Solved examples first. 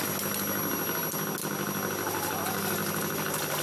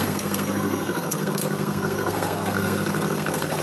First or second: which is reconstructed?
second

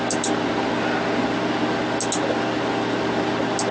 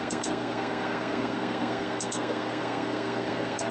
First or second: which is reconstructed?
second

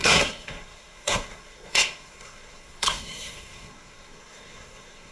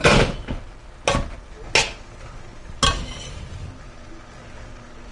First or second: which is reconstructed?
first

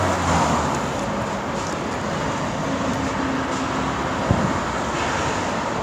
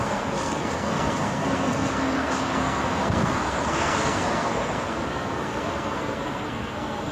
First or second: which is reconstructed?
second